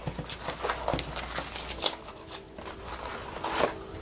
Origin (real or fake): real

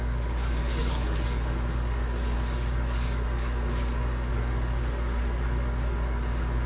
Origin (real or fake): fake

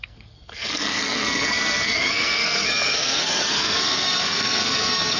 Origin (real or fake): fake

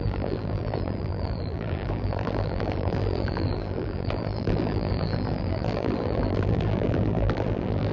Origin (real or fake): fake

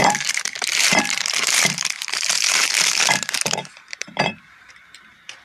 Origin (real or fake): fake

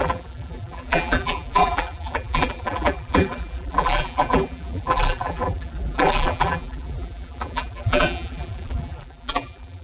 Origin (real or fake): fake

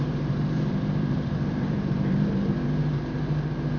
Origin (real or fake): fake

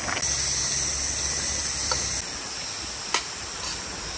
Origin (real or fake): real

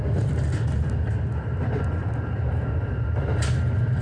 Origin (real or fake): real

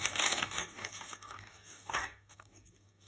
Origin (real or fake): fake